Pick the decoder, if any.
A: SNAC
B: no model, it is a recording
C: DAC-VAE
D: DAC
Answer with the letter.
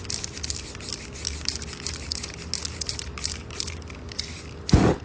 B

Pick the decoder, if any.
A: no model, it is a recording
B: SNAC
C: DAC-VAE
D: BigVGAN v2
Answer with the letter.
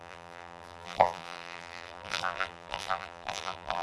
D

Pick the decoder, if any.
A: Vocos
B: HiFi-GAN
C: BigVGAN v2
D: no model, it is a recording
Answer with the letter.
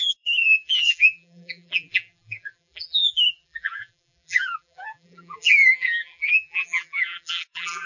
C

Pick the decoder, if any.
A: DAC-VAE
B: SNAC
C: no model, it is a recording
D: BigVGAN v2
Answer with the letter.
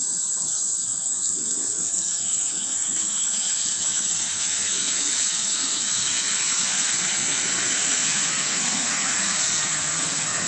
B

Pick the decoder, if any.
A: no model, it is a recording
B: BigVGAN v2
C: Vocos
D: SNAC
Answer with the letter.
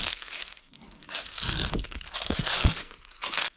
D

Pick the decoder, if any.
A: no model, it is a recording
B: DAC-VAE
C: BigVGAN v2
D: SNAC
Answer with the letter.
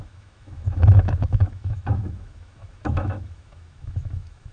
B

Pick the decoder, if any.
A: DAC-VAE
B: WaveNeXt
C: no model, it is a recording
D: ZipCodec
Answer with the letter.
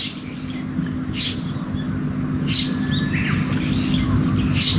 C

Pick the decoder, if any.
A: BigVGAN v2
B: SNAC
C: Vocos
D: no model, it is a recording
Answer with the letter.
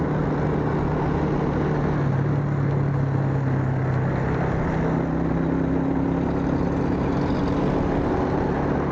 D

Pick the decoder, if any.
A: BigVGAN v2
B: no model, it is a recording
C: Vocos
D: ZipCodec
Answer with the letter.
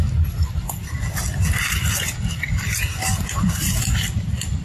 B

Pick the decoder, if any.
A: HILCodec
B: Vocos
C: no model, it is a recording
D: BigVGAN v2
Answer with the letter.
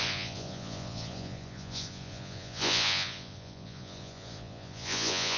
B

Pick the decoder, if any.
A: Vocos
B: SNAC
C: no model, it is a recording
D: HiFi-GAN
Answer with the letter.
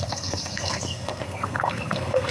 B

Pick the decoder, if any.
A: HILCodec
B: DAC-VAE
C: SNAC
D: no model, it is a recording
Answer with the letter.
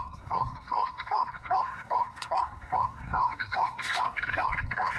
C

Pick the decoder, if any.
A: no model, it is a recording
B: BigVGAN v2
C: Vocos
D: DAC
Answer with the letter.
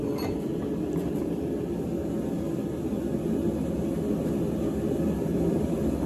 A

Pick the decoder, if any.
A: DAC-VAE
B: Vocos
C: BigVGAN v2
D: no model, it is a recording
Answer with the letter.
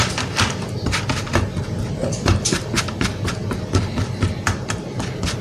C